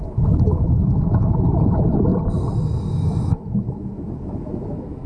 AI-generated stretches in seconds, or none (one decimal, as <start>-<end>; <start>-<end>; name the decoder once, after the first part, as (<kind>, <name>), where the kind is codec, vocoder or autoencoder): 0.0-2.1 (autoencoder, DAC-VAE); 2.9-5.1